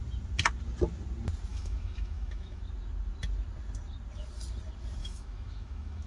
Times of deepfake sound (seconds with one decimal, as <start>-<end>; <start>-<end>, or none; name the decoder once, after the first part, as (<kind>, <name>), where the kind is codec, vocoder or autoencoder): 1.5-2.6 (autoencoder, DAC-VAE); 5.0-6.1